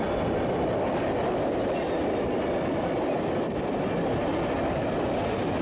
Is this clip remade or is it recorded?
recorded